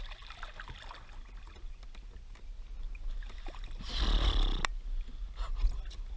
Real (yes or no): yes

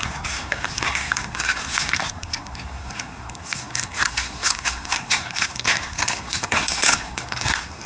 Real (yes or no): no